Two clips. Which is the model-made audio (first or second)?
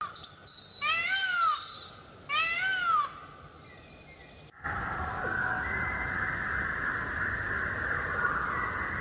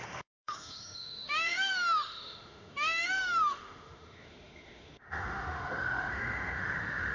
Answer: second